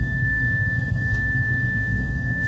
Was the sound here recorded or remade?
remade